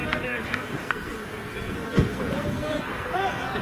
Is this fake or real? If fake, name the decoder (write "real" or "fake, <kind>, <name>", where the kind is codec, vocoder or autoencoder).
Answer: fake, codec, SNAC